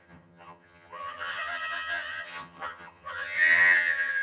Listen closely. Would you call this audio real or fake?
fake